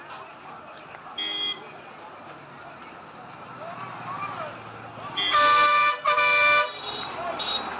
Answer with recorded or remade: recorded